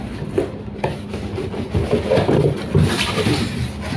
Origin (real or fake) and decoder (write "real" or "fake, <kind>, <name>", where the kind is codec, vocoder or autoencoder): real